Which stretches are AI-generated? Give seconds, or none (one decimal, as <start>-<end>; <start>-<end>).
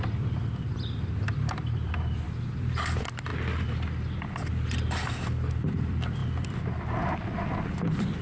0.0-3.3; 4.5-8.2